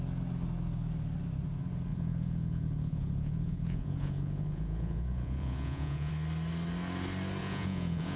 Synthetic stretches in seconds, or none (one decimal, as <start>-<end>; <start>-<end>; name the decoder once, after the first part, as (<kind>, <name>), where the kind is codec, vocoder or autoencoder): 1.9-6.1 (vocoder, Vocos); 7.4-8.2